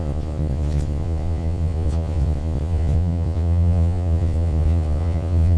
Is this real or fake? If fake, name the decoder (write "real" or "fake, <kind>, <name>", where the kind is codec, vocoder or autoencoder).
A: fake, vocoder, Vocos